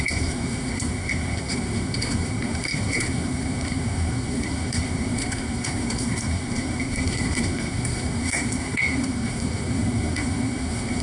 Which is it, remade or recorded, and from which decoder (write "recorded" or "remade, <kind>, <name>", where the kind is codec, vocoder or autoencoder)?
remade, codec, SNAC